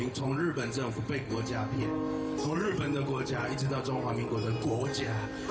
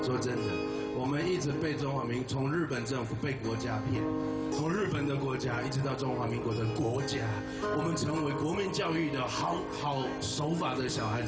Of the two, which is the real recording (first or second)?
second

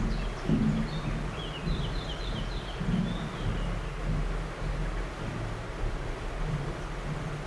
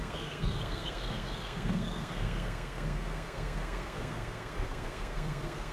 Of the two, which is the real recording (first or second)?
first